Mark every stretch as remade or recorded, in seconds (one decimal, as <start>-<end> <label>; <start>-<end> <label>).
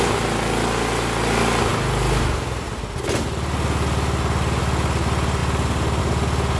0.0-6.6 recorded